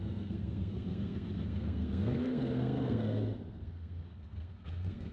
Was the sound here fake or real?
fake